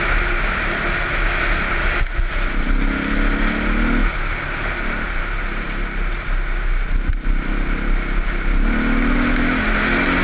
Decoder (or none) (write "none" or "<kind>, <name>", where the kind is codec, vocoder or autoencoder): none